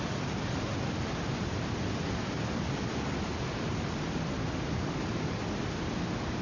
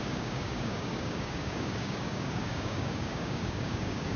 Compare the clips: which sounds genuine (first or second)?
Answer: first